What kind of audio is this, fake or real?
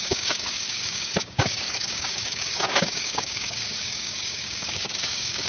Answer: fake